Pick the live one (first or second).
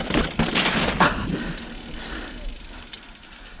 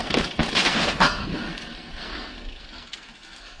first